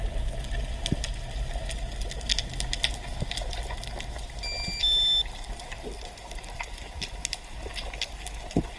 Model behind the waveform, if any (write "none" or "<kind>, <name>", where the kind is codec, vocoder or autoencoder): none